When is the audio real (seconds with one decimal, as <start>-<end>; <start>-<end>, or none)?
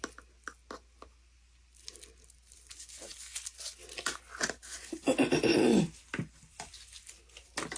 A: 0.0-5.5; 6.7-7.8